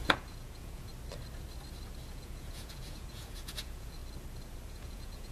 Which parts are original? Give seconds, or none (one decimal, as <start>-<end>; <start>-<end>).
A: 0.9-2.1; 4.0-4.7